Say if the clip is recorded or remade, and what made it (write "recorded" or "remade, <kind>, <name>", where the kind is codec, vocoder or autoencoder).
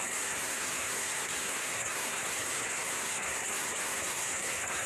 remade, codec, SNAC